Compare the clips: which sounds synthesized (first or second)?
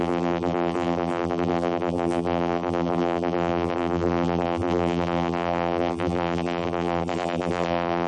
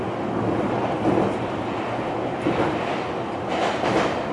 first